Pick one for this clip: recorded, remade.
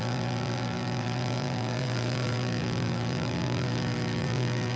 remade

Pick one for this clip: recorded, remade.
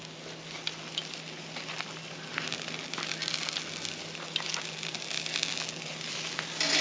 recorded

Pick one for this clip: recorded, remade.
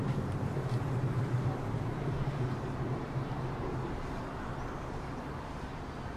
remade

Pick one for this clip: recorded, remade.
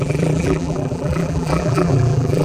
remade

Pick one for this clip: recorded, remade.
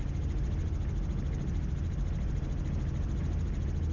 recorded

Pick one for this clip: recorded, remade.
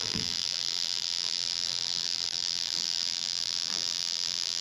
remade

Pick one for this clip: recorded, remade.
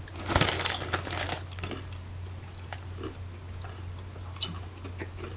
recorded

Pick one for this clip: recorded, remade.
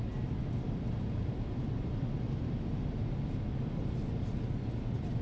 recorded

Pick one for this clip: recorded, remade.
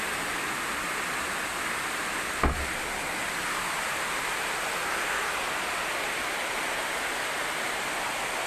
recorded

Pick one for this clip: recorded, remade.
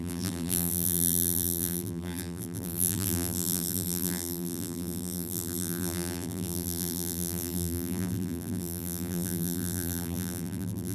remade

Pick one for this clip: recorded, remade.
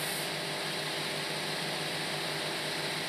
recorded